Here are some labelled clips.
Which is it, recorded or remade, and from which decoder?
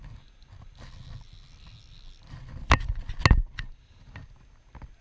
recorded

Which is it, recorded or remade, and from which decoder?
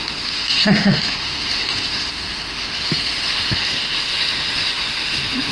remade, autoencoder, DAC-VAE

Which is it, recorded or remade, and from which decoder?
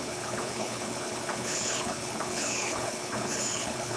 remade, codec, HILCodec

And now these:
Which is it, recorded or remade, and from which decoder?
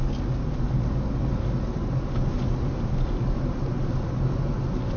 recorded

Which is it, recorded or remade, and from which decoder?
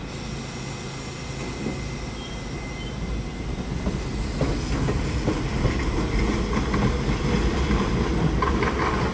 recorded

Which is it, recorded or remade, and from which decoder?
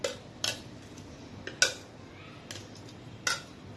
recorded